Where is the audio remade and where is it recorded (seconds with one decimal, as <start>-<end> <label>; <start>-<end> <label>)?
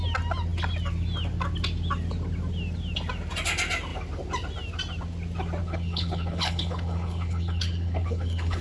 0.0-5.6 recorded; 5.6-8.6 remade